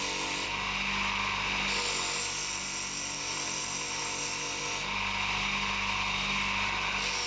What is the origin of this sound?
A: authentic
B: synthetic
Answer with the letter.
A